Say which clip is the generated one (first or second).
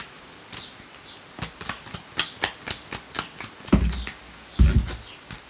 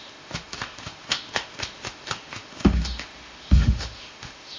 second